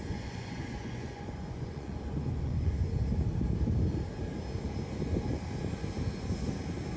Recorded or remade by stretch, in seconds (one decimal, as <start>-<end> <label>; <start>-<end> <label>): 0.0-2.7 remade; 2.7-7.0 recorded